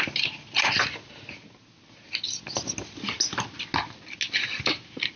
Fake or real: real